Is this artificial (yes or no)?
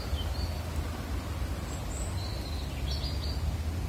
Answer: no